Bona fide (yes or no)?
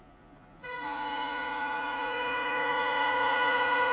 no